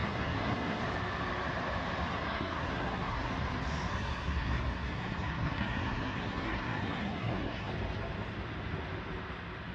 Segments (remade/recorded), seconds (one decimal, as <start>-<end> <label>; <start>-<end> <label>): 0.0-0.8 remade; 0.8-2.1 recorded; 2.1-3.3 remade; 3.3-3.9 recorded; 3.9-7.7 remade; 7.7-9.7 recorded